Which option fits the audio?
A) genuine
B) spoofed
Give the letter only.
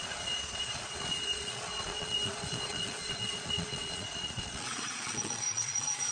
B